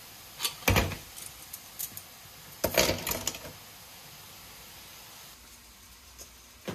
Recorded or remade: recorded